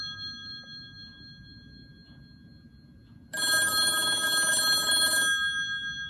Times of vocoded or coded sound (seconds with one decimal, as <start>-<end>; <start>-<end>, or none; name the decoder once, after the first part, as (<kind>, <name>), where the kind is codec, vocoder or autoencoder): none